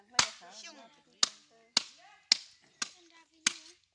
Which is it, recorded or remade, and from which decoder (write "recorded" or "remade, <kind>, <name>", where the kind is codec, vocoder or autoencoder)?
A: recorded